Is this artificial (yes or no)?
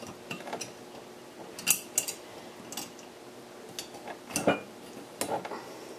no